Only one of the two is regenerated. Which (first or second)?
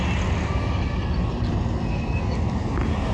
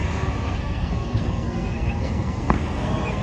second